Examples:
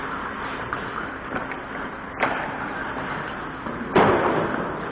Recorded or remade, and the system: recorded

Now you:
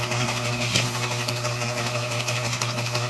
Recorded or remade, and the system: remade, codec, SNAC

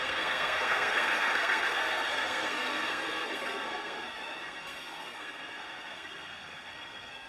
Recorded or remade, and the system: remade, codec, SNAC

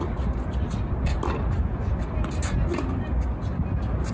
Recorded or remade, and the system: recorded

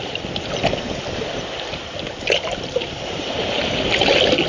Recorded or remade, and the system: recorded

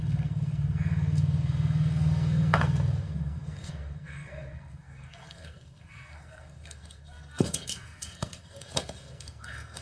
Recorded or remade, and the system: remade, codec, SNAC